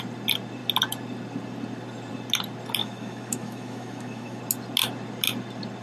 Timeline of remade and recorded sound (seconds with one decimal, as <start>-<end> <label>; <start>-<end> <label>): 0.0-2.8 recorded; 2.8-4.4 remade; 4.4-5.8 recorded